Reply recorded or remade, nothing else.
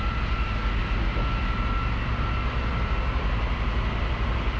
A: recorded